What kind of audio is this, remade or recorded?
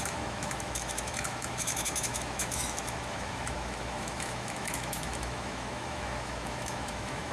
remade